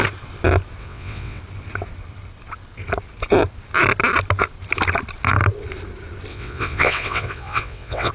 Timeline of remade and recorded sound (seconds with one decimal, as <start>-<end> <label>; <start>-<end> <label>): 0.0-0.8 recorded; 0.8-1.4 remade; 1.4-6.3 recorded; 6.3-8.1 remade